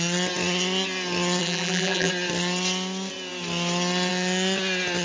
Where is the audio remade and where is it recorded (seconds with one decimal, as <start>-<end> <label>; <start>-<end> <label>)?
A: 0.0-1.4 recorded; 1.4-2.1 remade; 2.1-5.0 recorded